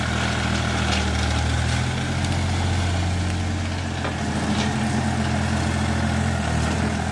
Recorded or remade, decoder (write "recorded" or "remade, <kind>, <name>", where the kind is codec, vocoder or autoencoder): recorded